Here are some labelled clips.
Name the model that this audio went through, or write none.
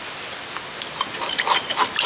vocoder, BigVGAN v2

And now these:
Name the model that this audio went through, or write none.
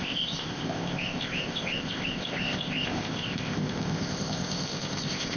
codec, ZipCodec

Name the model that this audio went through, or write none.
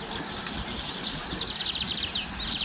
none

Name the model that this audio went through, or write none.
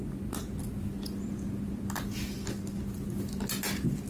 none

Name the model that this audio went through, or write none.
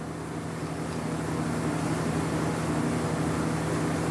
none